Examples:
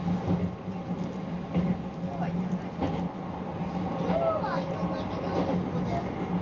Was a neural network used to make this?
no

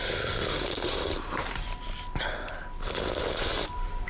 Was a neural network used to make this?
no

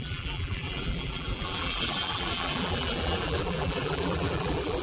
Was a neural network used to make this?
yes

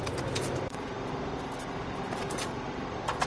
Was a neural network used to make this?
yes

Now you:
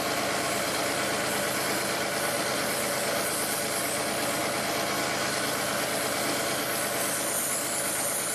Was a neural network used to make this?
no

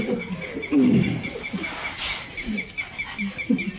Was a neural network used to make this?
no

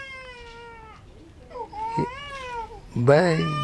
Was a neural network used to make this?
no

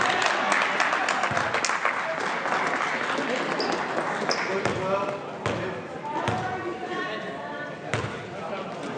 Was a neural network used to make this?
no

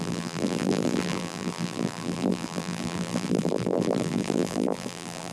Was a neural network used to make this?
yes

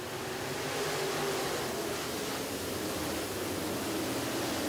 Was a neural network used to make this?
no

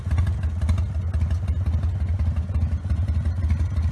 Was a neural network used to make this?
no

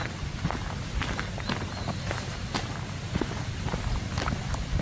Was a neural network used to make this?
no